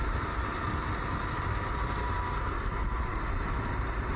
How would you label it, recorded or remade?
recorded